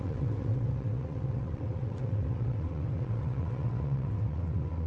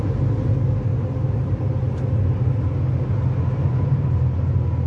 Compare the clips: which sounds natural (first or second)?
second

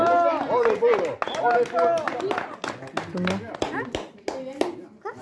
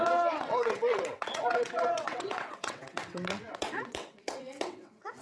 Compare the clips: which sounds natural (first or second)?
first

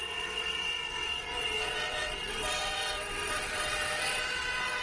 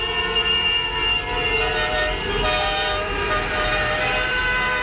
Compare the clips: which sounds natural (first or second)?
second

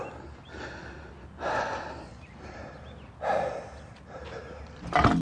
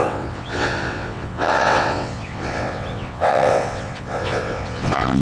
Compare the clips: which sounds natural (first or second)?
first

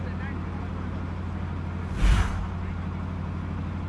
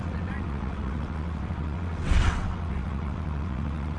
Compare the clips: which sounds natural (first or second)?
first